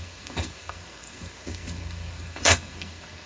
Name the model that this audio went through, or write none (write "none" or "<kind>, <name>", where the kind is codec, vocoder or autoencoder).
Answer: codec, SNAC